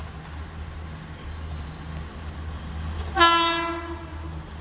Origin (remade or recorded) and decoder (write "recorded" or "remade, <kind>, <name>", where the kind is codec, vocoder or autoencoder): recorded